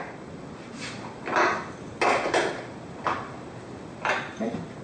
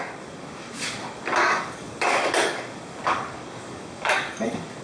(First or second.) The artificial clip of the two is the second